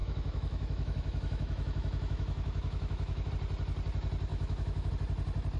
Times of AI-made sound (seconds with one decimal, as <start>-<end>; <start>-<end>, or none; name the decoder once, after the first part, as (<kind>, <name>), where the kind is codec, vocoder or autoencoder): 0.0-3.3 (autoencoder, DAC-VAE); 4.3-4.9